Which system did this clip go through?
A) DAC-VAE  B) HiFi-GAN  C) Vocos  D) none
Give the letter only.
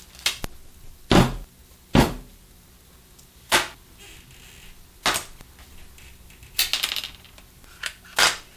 D